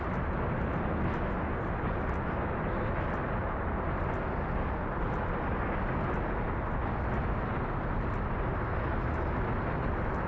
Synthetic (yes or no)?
no